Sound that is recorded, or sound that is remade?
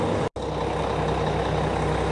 recorded